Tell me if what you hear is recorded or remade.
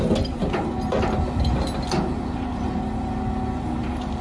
recorded